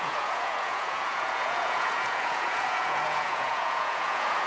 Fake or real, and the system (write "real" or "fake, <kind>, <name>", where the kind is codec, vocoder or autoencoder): fake, vocoder, Vocos